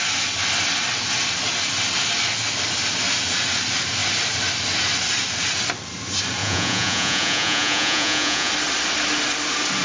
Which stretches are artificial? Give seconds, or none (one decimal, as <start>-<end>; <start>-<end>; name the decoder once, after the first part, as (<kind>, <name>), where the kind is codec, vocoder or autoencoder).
6.4-8.5 (vocoder, Vocos)